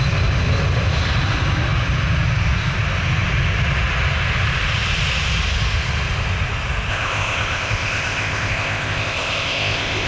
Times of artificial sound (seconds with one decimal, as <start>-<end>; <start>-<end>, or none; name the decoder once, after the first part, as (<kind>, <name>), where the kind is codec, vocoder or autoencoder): 6.9-10.1 (codec, ZipCodec)